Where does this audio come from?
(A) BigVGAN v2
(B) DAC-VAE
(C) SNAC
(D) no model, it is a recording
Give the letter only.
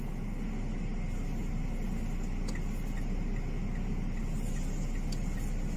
D